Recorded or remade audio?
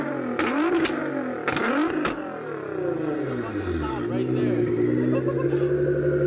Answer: recorded